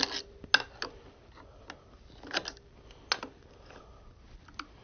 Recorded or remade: recorded